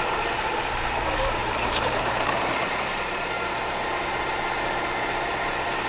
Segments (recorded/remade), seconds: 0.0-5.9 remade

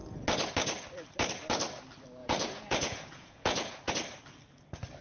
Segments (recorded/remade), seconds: 0.0-2.2 recorded; 2.2-3.9 remade; 3.9-5.0 recorded

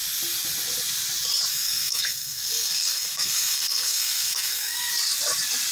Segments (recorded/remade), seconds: 0.0-1.5 recorded; 1.5-4.9 remade; 4.9-5.7 recorded

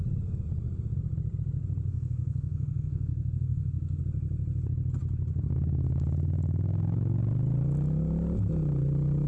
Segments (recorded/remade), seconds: 0.0-1.9 recorded; 1.9-4.0 remade; 4.0-9.3 recorded

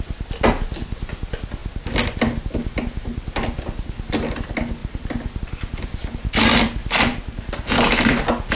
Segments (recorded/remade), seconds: 0.0-8.6 recorded